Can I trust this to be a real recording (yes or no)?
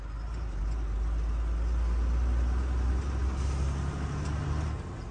yes